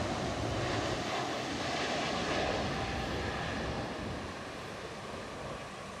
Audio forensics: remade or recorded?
recorded